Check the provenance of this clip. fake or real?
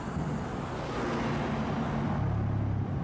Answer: real